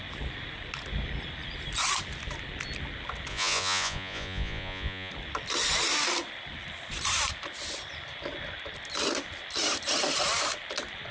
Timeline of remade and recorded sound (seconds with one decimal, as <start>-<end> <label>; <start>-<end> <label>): 0.0-3.3 recorded; 3.3-5.1 remade; 5.1-11.1 recorded